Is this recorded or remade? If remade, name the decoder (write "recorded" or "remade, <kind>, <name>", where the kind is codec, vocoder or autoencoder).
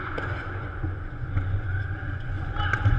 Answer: remade, vocoder, Vocos